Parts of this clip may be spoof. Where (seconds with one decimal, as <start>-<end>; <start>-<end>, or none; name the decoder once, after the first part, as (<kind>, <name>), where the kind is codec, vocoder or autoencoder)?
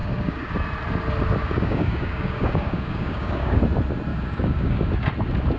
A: 0.0-0.5 (codec, DAC); 1.4-3.6; 4.1-4.9